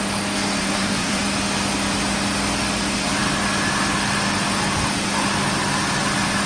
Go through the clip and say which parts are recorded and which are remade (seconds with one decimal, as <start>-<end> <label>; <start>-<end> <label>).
0.0-0.6 recorded; 0.6-1.2 remade; 1.2-6.5 recorded